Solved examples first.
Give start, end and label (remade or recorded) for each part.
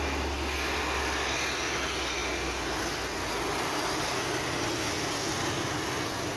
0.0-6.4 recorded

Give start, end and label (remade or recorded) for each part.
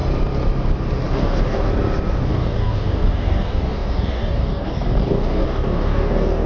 0.0-1.1 recorded; 1.1-1.7 remade; 1.7-2.3 recorded; 2.3-6.5 remade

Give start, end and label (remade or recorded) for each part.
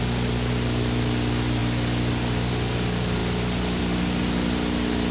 0.0-5.1 recorded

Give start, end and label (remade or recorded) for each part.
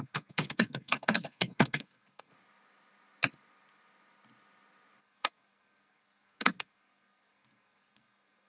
0.0-2.3 remade; 2.3-5.0 recorded; 5.0-8.5 remade